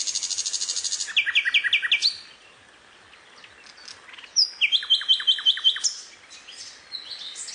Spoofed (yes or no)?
no